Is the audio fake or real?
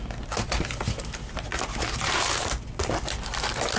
real